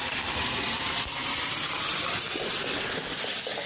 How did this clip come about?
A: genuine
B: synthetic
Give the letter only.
A